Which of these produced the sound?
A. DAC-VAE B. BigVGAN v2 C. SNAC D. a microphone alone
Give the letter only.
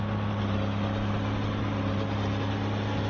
D